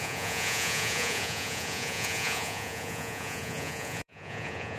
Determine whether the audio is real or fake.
fake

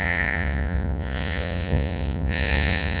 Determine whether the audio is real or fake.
fake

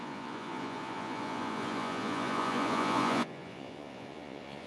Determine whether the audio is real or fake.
fake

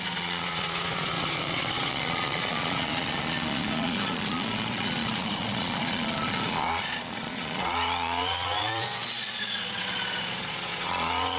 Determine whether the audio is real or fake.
fake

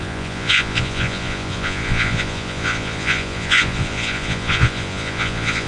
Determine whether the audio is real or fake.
fake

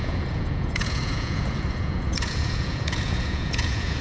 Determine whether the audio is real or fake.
fake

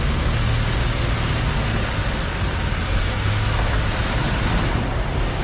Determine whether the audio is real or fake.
real